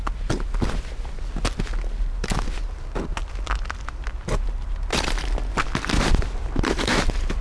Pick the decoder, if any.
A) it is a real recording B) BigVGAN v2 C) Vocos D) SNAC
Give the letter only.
A